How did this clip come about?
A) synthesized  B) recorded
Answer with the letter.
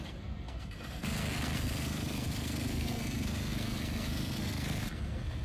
A